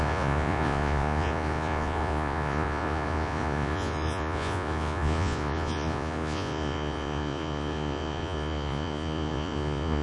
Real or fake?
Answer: fake